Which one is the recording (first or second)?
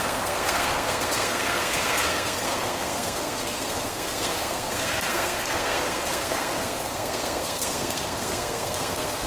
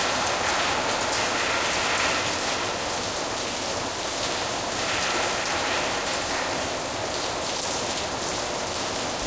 second